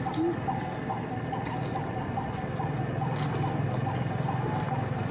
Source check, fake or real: real